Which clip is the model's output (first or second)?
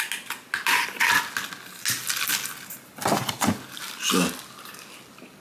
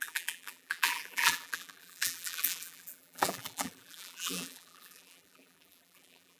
second